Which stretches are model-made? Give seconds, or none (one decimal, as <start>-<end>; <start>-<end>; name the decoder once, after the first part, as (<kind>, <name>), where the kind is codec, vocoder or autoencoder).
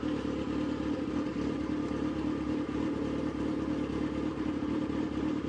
none